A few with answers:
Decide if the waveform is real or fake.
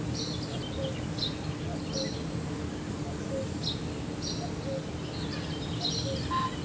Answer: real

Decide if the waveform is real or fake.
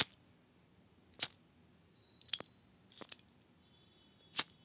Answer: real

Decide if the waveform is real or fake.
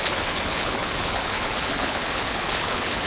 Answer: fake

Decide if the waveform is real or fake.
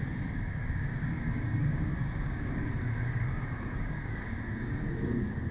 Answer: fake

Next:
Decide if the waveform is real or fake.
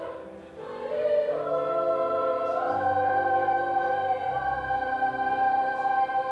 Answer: real